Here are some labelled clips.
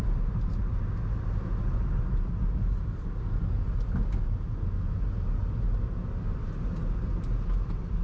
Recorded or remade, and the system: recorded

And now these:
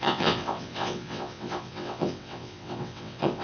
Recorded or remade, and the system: remade, vocoder, WaveNeXt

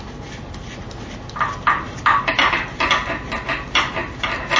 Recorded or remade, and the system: recorded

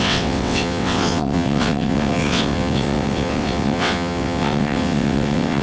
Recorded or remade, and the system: remade, vocoder, WaveNeXt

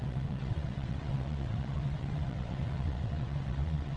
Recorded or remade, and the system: remade, vocoder, WaveNeXt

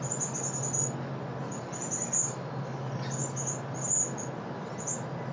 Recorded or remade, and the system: recorded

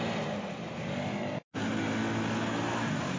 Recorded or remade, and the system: recorded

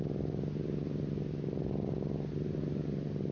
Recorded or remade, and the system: recorded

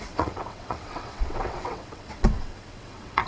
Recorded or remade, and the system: remade, vocoder, WaveNeXt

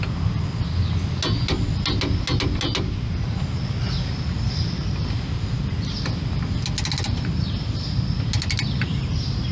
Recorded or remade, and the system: recorded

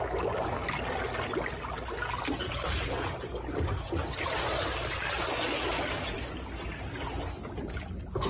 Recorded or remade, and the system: recorded